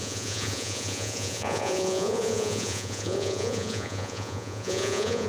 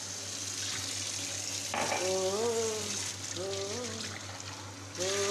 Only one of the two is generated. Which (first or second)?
first